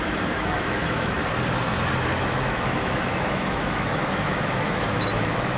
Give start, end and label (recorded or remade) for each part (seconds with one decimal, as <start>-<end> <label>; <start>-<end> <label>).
0.0-1.2 remade; 1.2-2.2 recorded; 2.2-5.6 remade